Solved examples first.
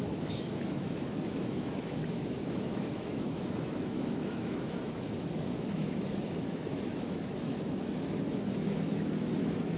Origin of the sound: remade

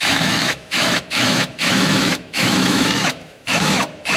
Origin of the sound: remade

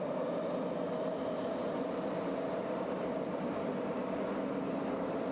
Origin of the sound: recorded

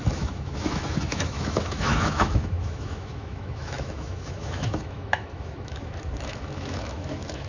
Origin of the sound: remade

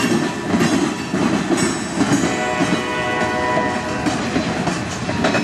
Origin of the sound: recorded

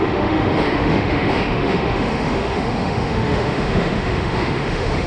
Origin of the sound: remade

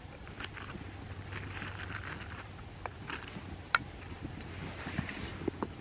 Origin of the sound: recorded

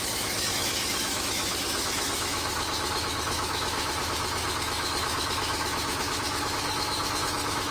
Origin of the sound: remade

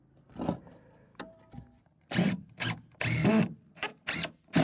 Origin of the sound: recorded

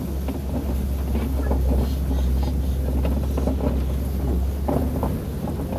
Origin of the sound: recorded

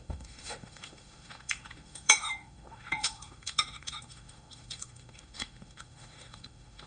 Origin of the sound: remade